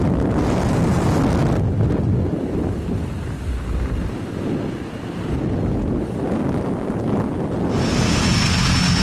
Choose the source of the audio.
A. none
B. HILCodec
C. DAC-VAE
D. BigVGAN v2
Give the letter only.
A